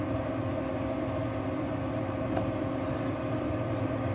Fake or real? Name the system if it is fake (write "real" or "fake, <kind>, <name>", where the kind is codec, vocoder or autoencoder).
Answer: real